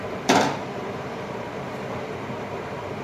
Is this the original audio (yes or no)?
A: no